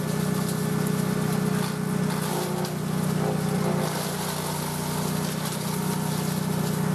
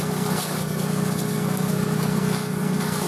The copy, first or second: second